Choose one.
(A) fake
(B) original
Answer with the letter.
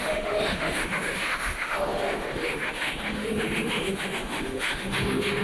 A